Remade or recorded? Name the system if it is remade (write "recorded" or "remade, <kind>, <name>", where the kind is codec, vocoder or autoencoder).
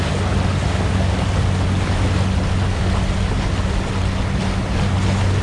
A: recorded